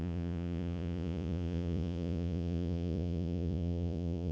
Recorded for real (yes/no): no